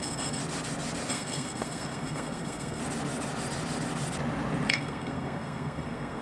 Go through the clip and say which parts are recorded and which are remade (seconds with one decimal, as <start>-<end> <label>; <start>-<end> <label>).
0.0-0.4 remade; 0.4-1.1 recorded; 1.1-2.8 remade; 2.8-4.7 recorded; 4.7-6.2 remade

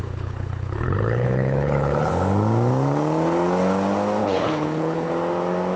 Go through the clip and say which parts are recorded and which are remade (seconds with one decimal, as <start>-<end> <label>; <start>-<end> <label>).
0.0-2.1 remade; 2.1-4.2 recorded; 4.2-5.1 remade; 5.1-5.8 recorded

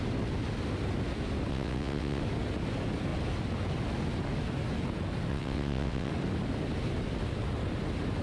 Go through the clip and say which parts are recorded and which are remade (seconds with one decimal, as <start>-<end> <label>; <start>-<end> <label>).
0.0-1.5 recorded; 1.5-2.2 remade; 2.2-5.3 recorded; 5.3-6.1 remade; 6.1-8.2 recorded

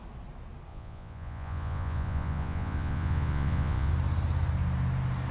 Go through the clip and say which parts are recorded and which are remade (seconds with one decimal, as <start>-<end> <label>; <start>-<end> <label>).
0.0-0.7 recorded; 0.7-3.9 remade; 3.9-5.3 recorded

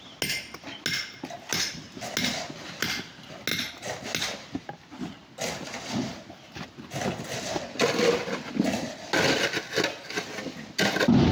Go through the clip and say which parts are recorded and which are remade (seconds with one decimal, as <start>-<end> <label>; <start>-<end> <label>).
0.0-11.3 recorded

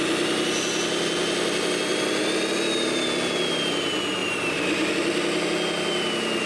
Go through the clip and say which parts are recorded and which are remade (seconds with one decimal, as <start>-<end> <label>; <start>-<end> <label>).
0.0-4.2 recorded; 4.2-4.9 remade; 4.9-6.5 recorded

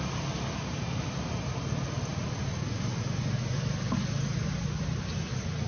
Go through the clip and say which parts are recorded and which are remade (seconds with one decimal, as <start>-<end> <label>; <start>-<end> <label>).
0.0-5.7 recorded

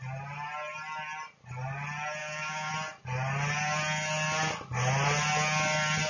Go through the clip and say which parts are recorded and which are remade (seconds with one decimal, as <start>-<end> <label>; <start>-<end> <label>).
0.0-2.2 recorded; 2.2-2.7 remade; 2.7-6.1 recorded